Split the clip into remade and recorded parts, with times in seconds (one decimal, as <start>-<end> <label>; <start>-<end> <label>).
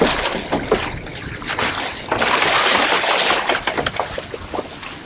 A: 0.0-5.1 recorded